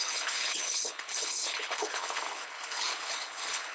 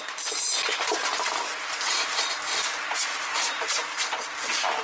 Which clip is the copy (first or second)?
first